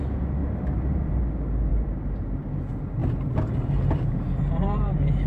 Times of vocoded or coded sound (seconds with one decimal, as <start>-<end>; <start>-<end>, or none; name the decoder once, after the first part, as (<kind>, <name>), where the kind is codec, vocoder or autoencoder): 0.4-1.2 (vocoder, BigVGAN v2); 1.7-2.5; 3.0-5.3